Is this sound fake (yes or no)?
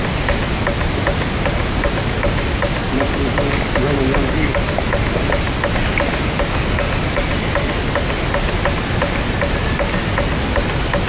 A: no